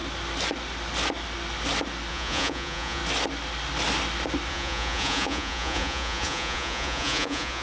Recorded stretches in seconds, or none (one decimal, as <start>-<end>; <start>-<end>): 0.0-2.1; 3.0-4.5